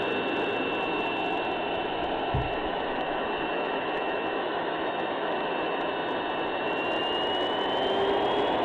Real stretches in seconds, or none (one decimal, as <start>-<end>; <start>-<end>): 0.0-2.6; 5.9-8.6